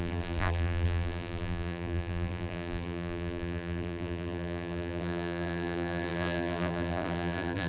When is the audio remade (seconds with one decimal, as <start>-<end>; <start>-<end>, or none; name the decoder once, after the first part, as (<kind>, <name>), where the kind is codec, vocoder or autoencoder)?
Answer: 0.0-7.7 (vocoder, BigVGAN v2)